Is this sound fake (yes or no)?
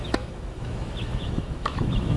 yes